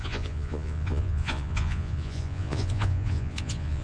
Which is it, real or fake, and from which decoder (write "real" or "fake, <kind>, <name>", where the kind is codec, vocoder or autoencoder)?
fake, vocoder, Vocos